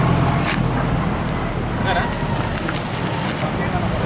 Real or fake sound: real